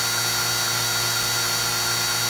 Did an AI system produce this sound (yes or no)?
no